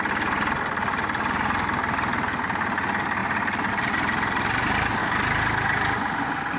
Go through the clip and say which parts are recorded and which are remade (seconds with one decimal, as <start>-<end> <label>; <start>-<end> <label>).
0.0-6.6 recorded